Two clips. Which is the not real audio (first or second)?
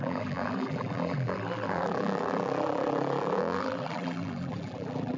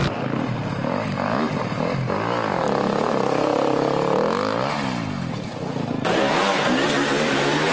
first